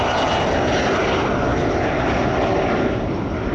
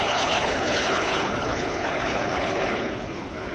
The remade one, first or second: second